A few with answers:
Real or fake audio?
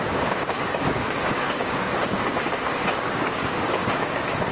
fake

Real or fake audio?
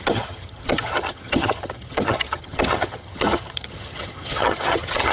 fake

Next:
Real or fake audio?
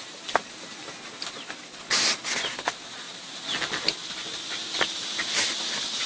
real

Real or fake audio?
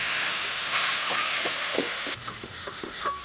fake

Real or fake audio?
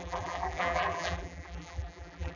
fake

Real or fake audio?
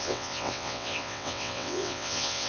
fake